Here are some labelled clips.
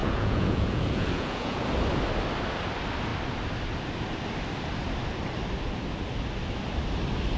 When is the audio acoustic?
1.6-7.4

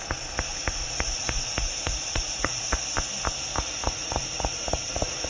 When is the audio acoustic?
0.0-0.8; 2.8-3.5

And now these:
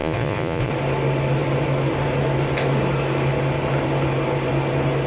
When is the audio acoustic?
0.7-5.1

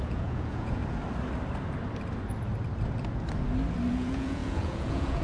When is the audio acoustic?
0.8-3.9